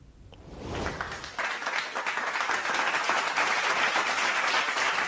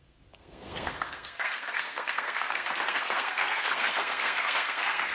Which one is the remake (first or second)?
second